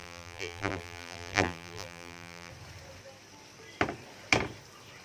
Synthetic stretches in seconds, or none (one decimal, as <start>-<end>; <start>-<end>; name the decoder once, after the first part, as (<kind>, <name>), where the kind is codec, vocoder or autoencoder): 0.0-2.5 (vocoder, BigVGAN v2)